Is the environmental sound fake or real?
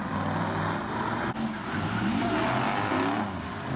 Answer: real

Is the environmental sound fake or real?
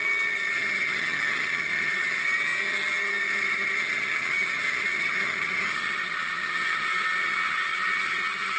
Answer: fake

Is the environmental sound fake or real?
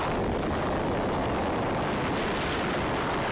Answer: real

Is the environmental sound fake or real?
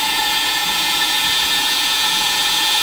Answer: fake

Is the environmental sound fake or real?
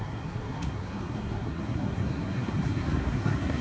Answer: fake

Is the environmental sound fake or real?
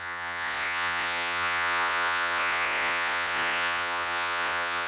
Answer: fake